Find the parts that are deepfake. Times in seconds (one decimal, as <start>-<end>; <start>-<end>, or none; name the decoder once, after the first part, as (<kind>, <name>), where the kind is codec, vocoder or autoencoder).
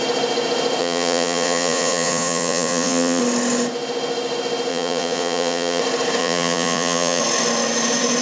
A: 0.8-3.2 (vocoder, Vocos); 4.7-5.8; 6.2-7.2